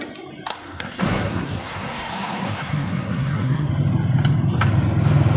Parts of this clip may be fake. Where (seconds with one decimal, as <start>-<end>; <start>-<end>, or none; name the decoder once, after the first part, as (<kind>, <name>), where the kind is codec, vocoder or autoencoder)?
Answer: 0.5-3.7 (codec, SNAC)